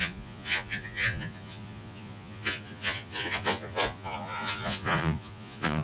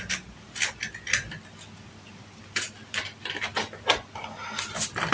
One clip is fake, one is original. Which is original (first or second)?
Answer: second